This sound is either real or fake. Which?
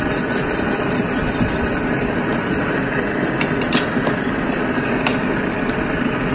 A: real